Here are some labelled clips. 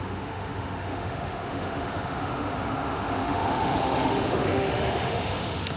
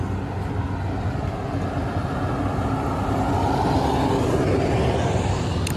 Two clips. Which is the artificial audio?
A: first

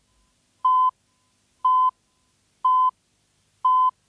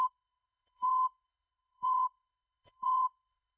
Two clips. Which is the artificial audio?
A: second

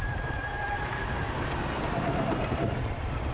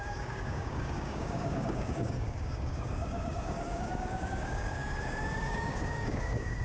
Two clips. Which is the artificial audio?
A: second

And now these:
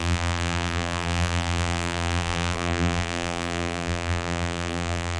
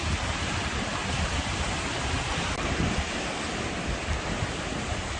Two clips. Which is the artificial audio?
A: first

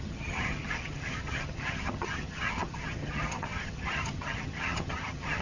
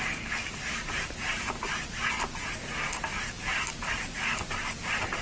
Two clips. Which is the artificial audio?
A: first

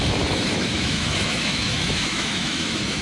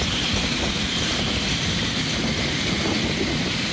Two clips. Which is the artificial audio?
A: first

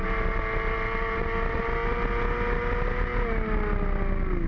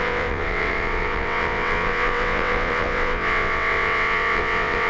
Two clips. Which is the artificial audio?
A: second